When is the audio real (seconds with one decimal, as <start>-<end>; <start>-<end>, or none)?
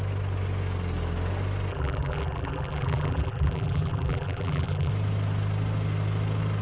0.0-1.7; 4.9-6.6